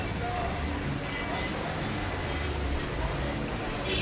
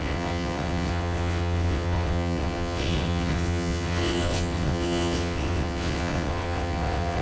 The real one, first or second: first